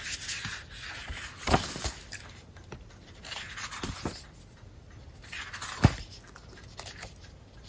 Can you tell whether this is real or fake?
real